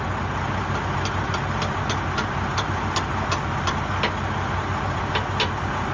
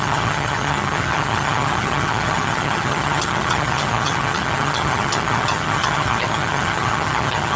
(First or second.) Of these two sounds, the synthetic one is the second